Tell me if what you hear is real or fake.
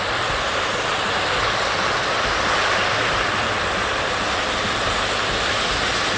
real